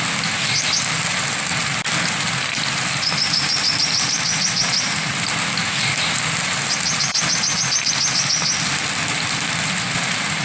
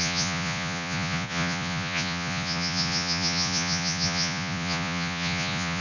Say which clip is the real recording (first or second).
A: first